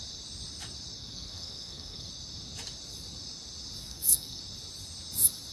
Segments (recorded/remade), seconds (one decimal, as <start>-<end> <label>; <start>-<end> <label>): 0.0-1.0 recorded; 1.0-2.1 remade; 2.1-3.8 recorded; 3.8-4.4 remade; 4.4-5.5 recorded